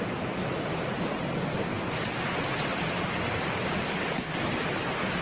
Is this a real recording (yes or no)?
yes